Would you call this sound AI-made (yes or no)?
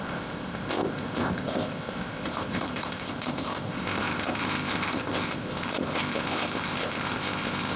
yes